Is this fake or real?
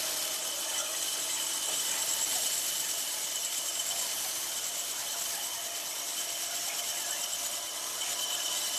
real